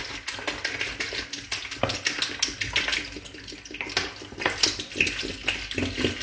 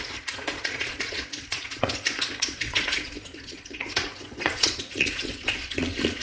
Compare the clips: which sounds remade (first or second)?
second